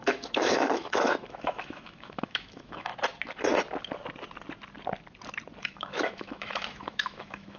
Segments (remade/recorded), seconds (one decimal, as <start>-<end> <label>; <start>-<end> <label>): 0.0-2.9 remade; 2.9-5.6 recorded; 5.6-7.6 remade